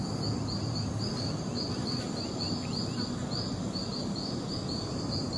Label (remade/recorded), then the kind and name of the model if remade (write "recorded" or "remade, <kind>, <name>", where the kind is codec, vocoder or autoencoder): recorded